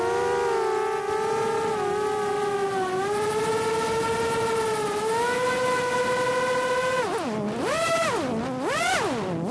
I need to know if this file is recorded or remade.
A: recorded